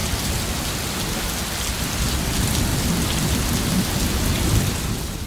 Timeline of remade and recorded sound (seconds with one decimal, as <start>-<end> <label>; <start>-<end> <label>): 0.0-2.7 recorded; 2.7-3.5 remade; 3.5-5.3 recorded